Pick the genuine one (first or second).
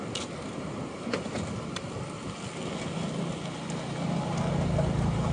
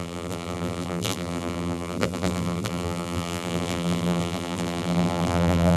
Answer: first